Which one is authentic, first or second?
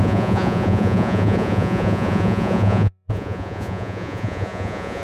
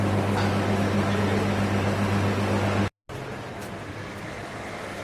second